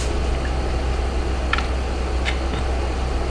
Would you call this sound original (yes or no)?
yes